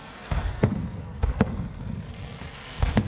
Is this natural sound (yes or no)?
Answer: no